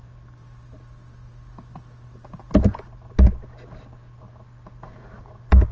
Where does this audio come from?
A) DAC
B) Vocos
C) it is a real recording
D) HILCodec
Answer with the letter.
C